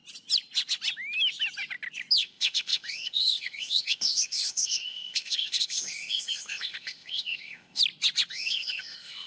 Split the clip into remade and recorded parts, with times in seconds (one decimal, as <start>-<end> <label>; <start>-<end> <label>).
0.0-2.2 recorded; 2.2-7.8 remade; 7.8-8.3 recorded; 8.3-9.3 remade